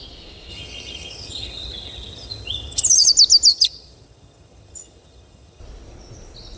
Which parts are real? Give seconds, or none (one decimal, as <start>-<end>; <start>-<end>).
0.0-0.5; 3.1-3.5; 5.6-6.6